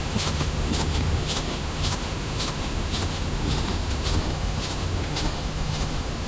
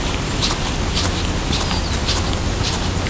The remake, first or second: first